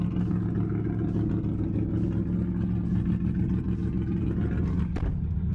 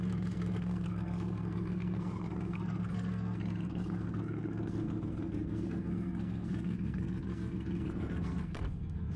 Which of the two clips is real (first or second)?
first